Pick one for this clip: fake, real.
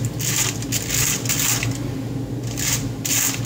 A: real